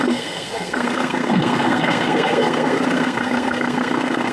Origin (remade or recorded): remade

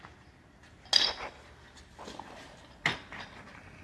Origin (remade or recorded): recorded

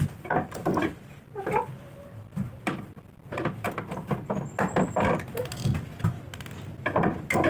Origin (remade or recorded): recorded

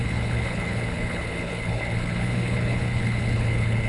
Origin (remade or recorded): remade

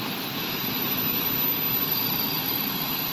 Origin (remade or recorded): remade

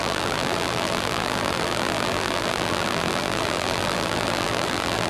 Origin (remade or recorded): remade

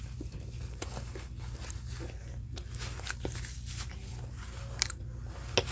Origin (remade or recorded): recorded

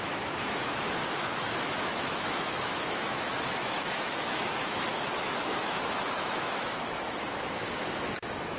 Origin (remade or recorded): remade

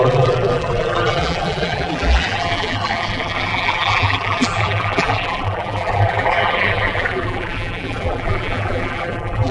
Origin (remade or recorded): remade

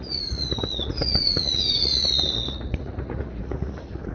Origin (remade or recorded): remade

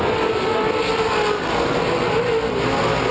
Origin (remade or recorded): recorded